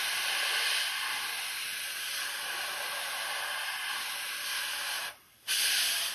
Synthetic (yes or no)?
no